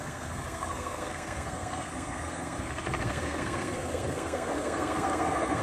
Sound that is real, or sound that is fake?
fake